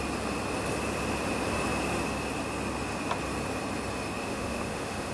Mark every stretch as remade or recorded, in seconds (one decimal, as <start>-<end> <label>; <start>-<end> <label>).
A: 0.0-4.2 recorded; 4.2-5.1 remade